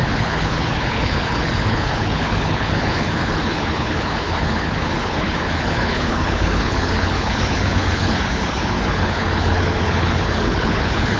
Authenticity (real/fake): fake